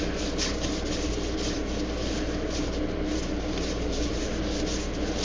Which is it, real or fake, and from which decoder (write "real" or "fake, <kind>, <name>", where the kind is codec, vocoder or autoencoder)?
real